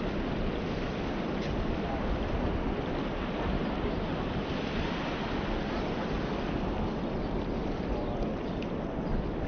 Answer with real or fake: real